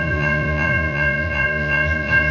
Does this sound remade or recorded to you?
remade